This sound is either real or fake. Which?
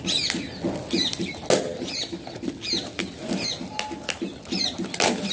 real